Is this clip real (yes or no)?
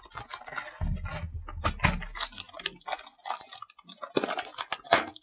yes